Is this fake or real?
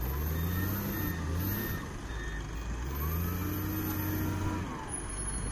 real